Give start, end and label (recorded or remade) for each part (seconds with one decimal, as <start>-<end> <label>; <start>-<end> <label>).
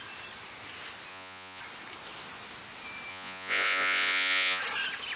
0.0-1.1 recorded; 1.1-1.6 remade; 1.6-3.1 recorded; 3.1-4.6 remade; 4.6-5.2 recorded